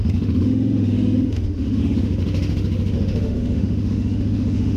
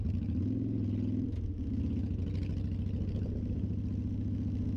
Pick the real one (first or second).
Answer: second